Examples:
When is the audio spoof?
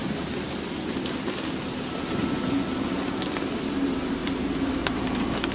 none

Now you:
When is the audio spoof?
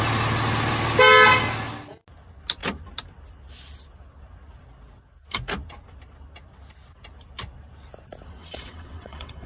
8.4-9.5 (vocoder, WaveNeXt)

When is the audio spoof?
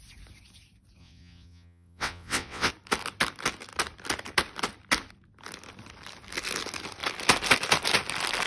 1.0-2.7 (vocoder, WaveNeXt)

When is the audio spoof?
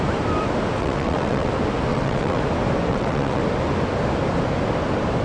0.8-1.5 (vocoder, WaveNeXt); 1.9-2.4; 2.9-3.4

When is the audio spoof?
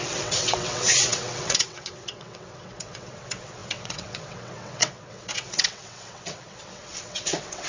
0.0-7.7 (vocoder, WaveNeXt)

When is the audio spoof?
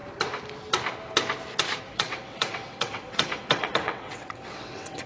1.9-5.1 (vocoder, WaveNeXt)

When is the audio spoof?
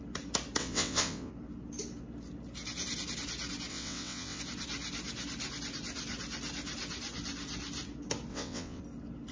0.6-1.3 (vocoder, WaveNeXt); 3.7-4.4; 8.3-8.8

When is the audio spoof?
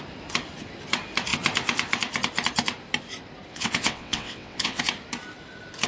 3.5-4.8 (vocoder, WaveNeXt)